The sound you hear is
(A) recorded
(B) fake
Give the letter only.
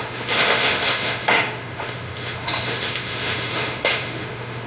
B